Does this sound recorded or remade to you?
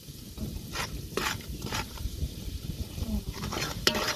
remade